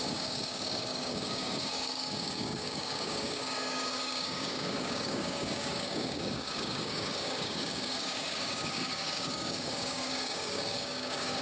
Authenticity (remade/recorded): remade